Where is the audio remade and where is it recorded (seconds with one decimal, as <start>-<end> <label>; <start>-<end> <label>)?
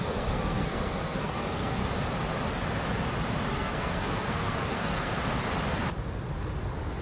0.0-1.8 remade; 1.8-3.5 recorded; 3.5-5.1 remade; 5.1-7.0 recorded